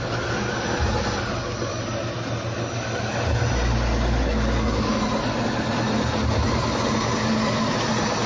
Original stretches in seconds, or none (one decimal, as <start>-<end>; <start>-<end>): 0.0-8.3